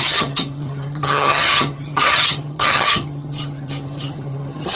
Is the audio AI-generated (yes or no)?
yes